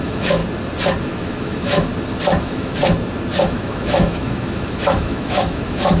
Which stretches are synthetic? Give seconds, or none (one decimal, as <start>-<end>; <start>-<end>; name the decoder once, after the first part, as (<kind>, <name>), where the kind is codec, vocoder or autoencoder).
0.0-0.4 (autoencoder, DAC-VAE); 1.0-1.9; 2.4-2.8; 3.5-6.0